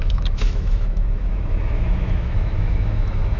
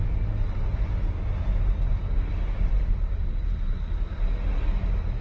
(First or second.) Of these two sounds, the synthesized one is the first